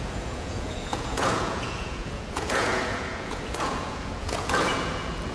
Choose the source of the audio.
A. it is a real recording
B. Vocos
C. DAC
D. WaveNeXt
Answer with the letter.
B